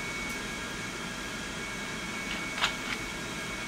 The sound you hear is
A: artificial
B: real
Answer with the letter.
B